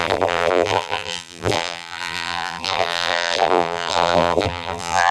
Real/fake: fake